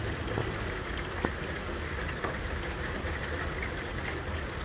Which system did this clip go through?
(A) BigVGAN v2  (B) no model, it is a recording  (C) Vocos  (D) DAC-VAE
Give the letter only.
B